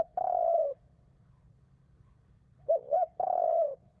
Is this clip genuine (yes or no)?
no